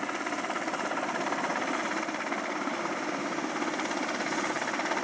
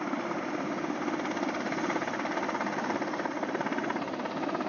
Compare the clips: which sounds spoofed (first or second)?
second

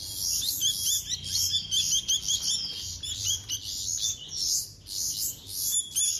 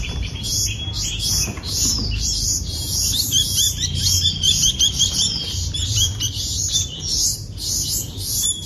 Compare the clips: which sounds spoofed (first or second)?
second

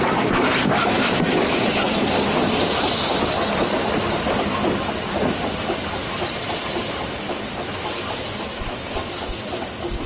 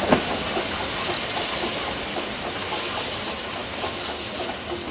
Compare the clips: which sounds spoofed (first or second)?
first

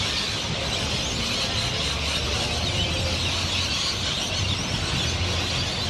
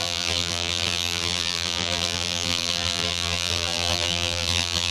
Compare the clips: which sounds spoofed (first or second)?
second